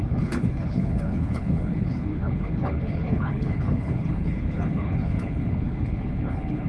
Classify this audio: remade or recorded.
remade